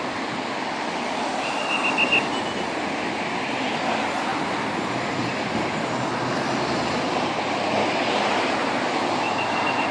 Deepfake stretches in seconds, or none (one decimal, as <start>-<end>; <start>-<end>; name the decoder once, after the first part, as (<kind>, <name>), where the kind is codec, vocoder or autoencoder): none